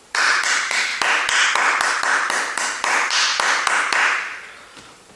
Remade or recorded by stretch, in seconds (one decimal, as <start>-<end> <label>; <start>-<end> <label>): 0.0-0.9 remade; 0.9-1.9 recorded; 1.9-3.3 remade; 3.3-4.7 recorded; 4.7-5.2 remade